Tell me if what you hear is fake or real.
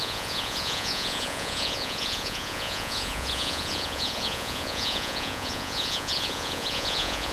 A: fake